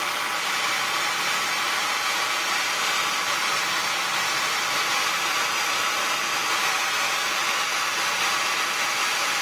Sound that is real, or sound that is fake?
real